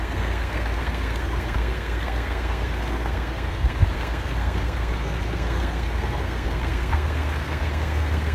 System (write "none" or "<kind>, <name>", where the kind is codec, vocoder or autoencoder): codec, SNAC